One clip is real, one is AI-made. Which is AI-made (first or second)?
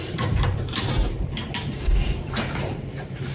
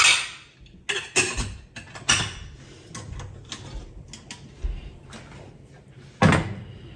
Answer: first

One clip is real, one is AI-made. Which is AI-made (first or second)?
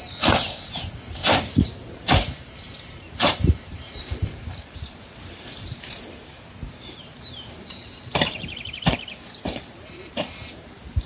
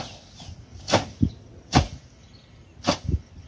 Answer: first